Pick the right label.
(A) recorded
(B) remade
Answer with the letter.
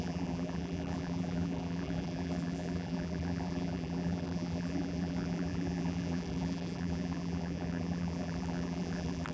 B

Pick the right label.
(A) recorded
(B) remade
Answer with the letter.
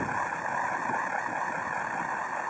A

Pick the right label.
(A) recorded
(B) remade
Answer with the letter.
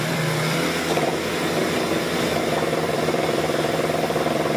B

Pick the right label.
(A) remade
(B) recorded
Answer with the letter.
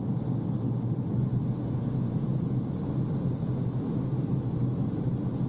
B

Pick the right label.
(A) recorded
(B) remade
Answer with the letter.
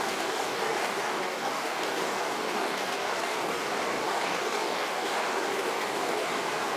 B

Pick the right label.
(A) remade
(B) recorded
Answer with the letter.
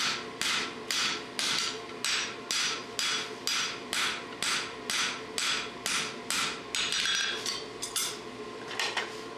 B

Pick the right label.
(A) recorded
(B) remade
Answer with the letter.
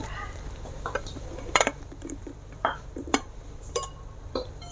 B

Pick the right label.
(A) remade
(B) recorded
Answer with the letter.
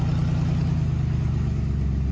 B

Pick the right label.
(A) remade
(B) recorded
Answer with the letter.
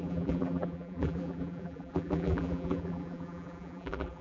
A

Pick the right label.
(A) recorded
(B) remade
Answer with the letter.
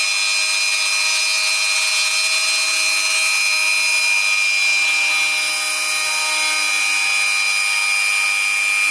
A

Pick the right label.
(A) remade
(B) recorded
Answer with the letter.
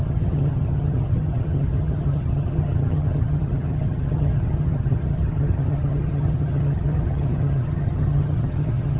A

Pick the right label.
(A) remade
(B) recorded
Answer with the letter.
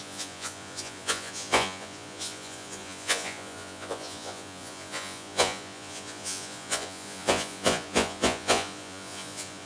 A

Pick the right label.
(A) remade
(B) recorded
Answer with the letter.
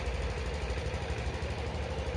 B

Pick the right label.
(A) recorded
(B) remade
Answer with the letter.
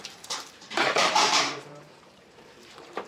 B